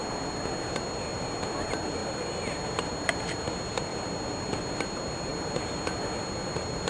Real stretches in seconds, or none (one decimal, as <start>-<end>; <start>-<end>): 0.0-6.9